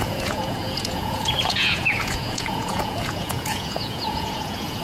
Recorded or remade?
remade